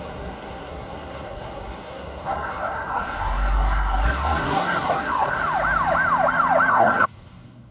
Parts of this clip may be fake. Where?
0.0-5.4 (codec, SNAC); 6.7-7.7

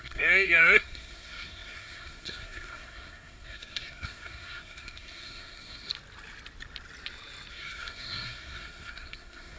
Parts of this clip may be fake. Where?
0.0-5.9 (codec, SNAC); 7.5-9.6

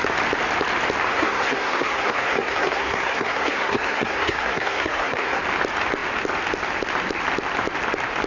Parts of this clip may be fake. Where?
1.1-5.4 (codec, SNAC)

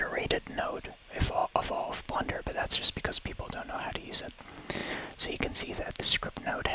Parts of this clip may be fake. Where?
none

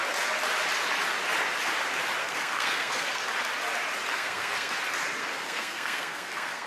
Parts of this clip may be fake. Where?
2.2-3.2 (codec, SNAC); 4.1-4.7; 5.2-6.7

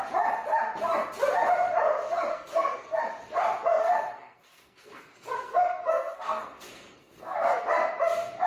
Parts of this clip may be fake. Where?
2.3-3.0 (codec, SNAC); 3.8-7.6

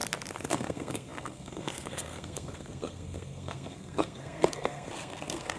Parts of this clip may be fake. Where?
0.5-5.6 (codec, SNAC)